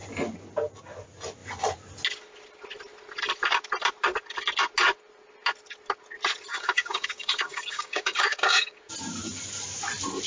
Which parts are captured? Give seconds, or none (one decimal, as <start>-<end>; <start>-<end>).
0.0-6.5; 8.8-10.3